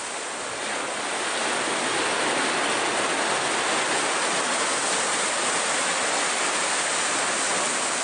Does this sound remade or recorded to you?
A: recorded